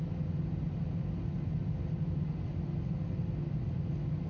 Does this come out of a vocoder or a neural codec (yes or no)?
no